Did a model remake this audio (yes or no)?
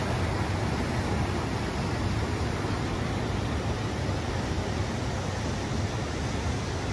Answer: no